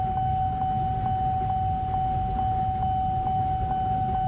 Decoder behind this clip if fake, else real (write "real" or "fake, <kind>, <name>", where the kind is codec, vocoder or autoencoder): real